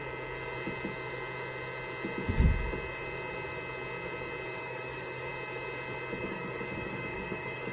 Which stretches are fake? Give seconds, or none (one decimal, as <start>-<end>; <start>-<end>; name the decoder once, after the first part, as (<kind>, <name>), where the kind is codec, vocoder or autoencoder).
4.6-5.3 (codec, DAC); 6.2-7.7